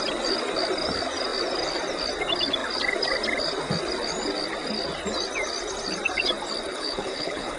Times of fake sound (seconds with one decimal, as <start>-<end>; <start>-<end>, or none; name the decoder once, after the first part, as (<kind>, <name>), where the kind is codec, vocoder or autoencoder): 6.7-7.6 (codec, HILCodec)